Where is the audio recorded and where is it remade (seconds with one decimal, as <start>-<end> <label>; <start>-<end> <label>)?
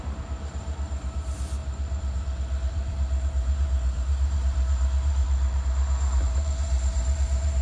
0.0-7.6 remade